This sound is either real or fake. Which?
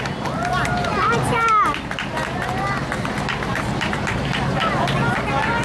real